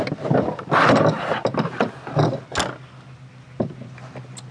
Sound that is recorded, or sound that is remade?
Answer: recorded